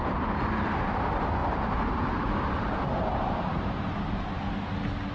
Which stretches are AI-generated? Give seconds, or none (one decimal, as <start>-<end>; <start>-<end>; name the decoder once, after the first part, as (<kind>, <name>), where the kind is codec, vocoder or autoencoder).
1.4-4.5 (vocoder, BigVGAN v2)